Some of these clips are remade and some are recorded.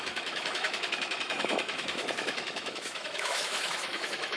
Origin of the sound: remade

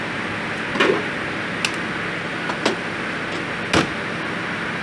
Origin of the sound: recorded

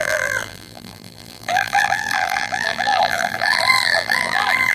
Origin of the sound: remade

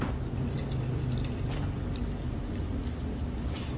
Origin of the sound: recorded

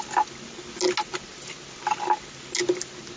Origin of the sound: recorded